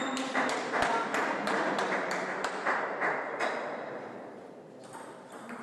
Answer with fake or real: fake